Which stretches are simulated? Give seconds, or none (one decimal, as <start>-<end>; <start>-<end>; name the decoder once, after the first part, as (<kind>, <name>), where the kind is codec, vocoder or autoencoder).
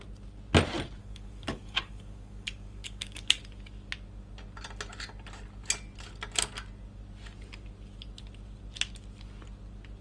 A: 1.0-3.4 (codec, DAC)